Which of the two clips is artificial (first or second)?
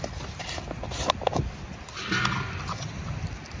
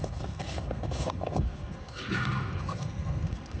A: second